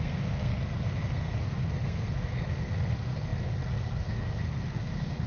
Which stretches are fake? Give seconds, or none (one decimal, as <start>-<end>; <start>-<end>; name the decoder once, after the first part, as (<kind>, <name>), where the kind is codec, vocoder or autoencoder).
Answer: 0.0-5.3 (codec, SNAC)